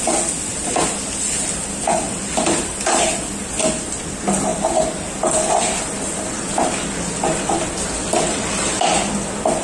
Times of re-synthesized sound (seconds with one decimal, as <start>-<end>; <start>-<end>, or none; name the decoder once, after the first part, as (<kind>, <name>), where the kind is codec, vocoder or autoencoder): none